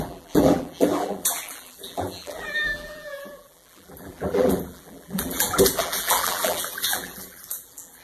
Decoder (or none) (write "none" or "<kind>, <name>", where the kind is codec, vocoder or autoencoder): vocoder, BigVGAN v2